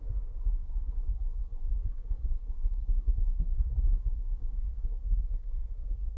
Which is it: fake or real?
fake